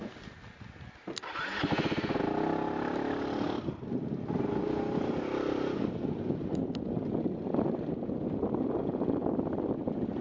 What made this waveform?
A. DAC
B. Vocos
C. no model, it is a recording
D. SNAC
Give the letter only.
C